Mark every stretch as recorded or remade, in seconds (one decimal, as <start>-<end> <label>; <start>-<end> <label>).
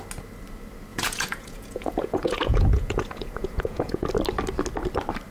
0.0-0.9 recorded; 0.9-4.1 remade; 4.1-5.3 recorded